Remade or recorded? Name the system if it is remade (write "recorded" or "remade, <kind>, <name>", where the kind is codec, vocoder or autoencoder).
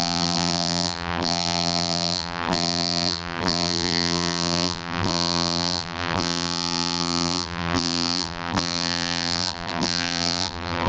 remade, vocoder, BigVGAN v2